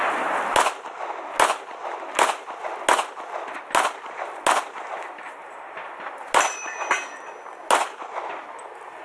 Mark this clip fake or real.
real